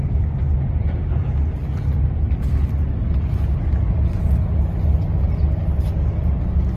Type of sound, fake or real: real